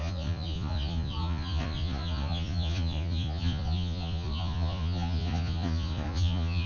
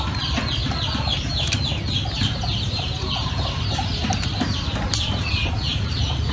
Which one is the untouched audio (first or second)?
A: second